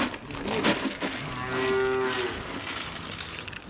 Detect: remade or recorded recorded